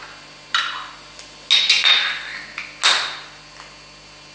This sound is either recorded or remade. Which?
recorded